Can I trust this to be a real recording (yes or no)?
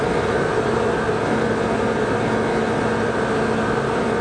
yes